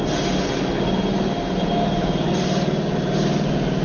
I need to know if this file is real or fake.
real